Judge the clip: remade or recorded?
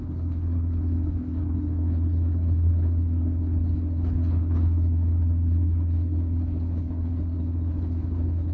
remade